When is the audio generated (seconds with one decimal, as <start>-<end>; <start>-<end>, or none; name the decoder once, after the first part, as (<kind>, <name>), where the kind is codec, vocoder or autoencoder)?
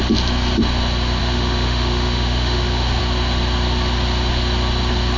1.2-3.0 (autoencoder, DAC-VAE)